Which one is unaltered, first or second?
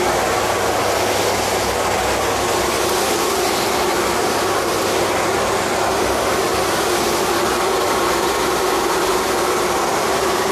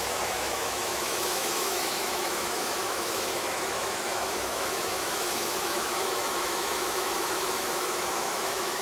first